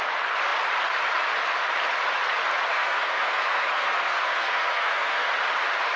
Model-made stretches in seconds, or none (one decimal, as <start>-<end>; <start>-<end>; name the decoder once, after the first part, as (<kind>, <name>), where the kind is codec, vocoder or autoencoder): 2.7-5.3 (codec, SNAC)